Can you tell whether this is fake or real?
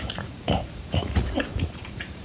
fake